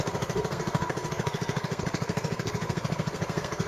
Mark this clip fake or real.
fake